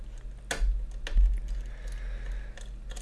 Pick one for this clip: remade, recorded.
recorded